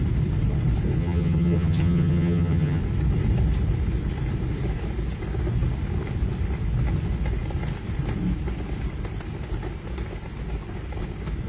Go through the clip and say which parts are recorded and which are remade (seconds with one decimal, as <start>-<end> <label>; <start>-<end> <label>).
0.0-1.0 recorded; 1.0-2.8 remade; 2.8-11.5 recorded